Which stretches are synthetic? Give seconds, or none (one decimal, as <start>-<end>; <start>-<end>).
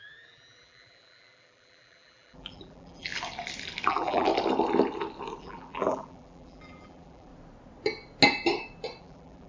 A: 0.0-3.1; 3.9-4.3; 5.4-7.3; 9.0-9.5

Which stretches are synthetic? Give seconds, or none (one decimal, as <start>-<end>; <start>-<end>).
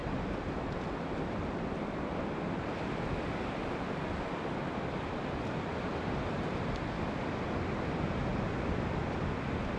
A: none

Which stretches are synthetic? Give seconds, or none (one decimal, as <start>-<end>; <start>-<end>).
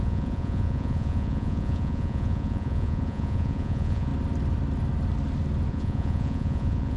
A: 0.0-4.1; 5.7-7.0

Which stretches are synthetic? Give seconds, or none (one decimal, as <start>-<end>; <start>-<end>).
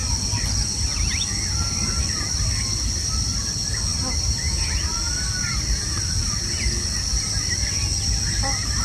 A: none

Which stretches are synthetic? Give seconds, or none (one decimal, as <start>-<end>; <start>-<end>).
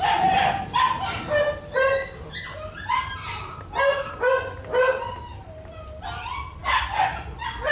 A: none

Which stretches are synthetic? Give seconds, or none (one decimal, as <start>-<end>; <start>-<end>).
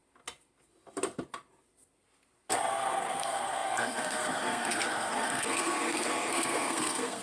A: 2.7-7.2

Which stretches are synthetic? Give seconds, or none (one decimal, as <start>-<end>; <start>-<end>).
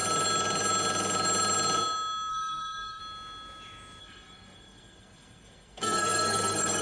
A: 2.3-3.0; 4.0-6.8